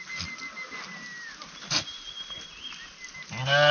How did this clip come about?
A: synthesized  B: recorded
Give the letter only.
B